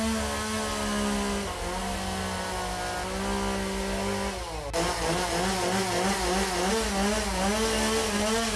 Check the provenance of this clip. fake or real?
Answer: real